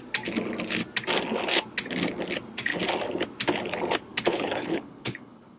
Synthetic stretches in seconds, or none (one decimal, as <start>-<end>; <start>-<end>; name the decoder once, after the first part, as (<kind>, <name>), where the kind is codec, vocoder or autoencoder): 4.1-5.6 (codec, HILCodec)